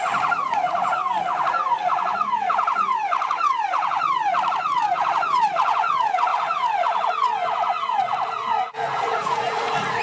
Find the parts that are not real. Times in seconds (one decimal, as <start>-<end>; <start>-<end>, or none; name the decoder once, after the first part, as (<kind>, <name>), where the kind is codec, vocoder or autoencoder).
0.0-10.0 (vocoder, Vocos)